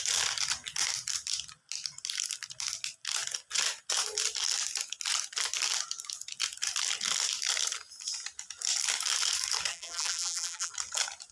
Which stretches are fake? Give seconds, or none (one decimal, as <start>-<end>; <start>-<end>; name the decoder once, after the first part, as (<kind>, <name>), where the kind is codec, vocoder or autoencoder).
9.7-10.7 (vocoder, BigVGAN v2)